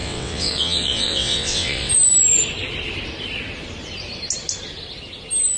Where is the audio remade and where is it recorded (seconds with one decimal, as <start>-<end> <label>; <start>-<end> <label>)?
0.0-1.9 remade; 1.9-5.6 recorded